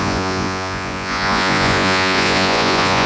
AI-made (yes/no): yes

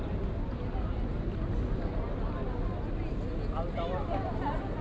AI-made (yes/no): no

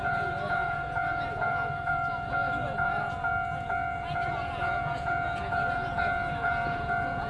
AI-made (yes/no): yes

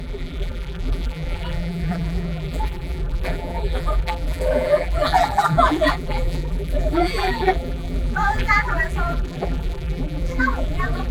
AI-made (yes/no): yes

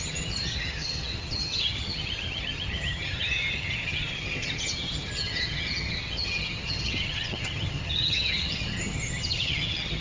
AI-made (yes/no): yes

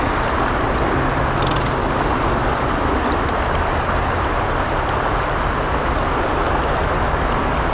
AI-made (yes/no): no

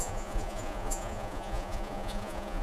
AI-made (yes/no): yes